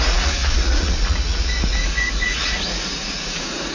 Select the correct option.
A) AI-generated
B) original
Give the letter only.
A